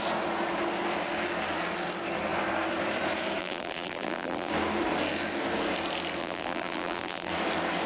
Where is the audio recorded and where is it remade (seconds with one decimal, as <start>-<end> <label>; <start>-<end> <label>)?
0.0-3.4 recorded; 3.4-4.5 remade; 4.5-6.2 recorded; 6.2-7.3 remade; 7.3-7.9 recorded